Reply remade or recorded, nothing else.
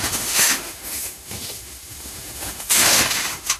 remade